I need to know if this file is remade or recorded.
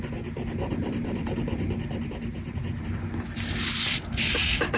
recorded